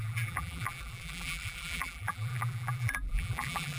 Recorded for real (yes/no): no